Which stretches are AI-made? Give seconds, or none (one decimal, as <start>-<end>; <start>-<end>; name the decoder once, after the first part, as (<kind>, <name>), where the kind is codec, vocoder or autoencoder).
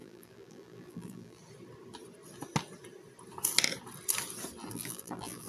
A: 0.0-1.4 (vocoder, BigVGAN v2); 4.7-5.5